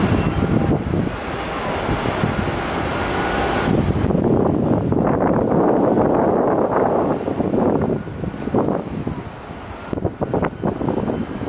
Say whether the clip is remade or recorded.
recorded